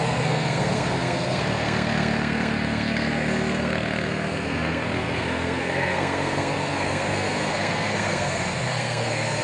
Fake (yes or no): yes